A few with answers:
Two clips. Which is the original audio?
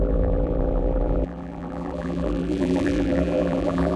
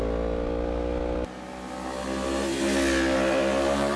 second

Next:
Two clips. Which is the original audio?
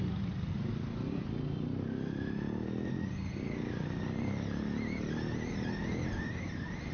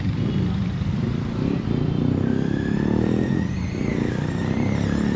first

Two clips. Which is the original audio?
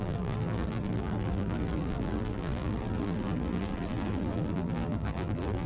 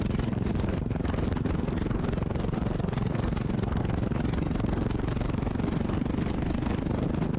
second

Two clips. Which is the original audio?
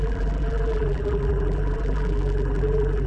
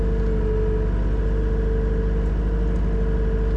second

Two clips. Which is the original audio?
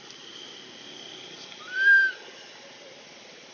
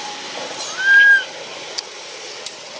second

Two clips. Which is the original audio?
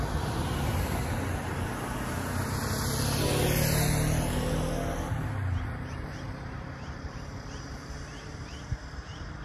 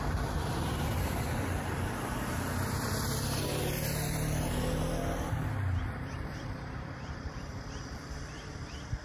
first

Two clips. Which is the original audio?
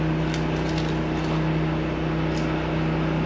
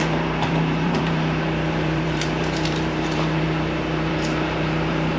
first